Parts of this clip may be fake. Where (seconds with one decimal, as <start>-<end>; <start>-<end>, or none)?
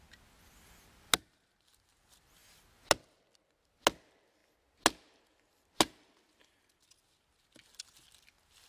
none